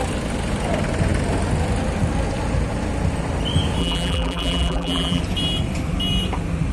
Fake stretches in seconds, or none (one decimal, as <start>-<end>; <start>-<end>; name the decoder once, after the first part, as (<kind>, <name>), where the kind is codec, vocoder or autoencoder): 3.8-5.2 (vocoder, BigVGAN v2)